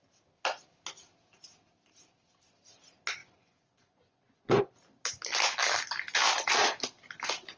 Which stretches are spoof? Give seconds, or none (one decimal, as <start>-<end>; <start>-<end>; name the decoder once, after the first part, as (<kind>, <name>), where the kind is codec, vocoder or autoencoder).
3.2-4.6 (vocoder, Vocos)